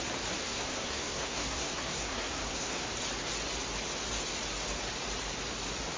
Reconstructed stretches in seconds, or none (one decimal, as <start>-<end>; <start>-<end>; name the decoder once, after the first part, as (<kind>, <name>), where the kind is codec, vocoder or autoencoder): 0.4-2.9 (codec, SNAC)